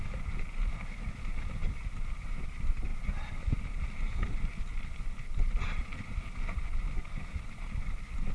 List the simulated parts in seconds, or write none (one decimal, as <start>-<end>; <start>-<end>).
none